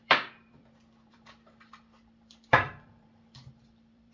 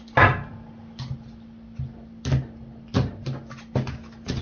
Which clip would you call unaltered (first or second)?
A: second